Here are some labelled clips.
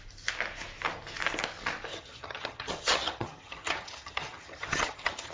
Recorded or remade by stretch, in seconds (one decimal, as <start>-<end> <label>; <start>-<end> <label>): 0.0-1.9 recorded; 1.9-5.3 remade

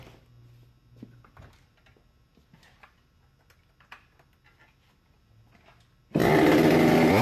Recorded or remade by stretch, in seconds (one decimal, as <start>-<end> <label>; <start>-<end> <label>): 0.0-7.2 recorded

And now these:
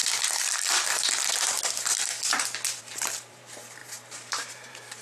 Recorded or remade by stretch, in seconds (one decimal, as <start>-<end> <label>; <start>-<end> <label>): 0.0-2.8 recorded; 2.8-5.0 remade